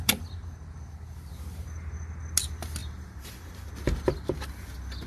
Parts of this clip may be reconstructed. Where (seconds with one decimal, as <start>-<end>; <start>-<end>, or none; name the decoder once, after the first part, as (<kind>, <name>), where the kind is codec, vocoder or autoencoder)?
2.8-3.7 (vocoder, BigVGAN v2)

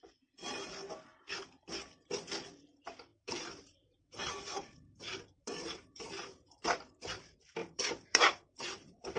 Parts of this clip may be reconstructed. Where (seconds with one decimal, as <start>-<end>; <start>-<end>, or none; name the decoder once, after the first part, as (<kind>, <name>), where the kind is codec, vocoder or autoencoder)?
3.1-6.8 (vocoder, BigVGAN v2); 7.6-9.2

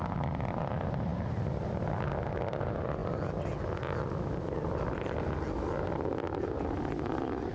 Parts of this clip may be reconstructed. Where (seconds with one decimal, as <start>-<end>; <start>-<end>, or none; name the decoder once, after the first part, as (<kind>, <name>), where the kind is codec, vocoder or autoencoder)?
none

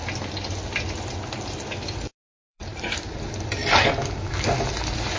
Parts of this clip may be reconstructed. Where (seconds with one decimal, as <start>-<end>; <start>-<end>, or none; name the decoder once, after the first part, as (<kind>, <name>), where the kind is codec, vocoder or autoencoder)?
2.4-3.2 (vocoder, BigVGAN v2)

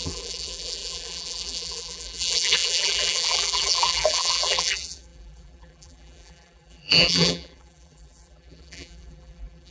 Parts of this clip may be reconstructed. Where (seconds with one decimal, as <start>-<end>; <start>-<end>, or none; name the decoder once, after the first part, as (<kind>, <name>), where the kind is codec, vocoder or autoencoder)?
0.0-9.7 (vocoder, BigVGAN v2)

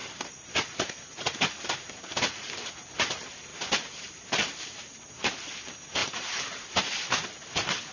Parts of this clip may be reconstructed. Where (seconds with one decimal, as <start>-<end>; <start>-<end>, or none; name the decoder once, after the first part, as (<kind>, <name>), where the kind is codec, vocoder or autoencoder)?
0.0-2.7 (vocoder, BigVGAN v2); 3.5-5.0; 6.0-6.8

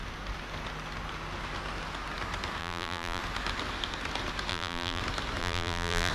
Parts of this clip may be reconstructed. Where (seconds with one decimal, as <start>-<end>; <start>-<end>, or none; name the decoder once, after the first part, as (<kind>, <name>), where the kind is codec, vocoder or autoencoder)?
2.6-3.2 (vocoder, BigVGAN v2); 4.5-5.0; 5.4-6.1